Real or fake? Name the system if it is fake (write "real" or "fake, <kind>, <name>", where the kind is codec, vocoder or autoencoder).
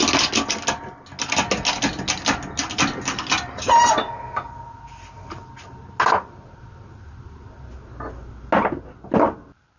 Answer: real